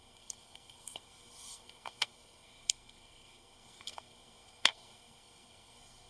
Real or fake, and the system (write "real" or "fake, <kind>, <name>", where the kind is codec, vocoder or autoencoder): fake, codec, SNAC